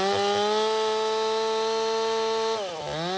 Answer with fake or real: real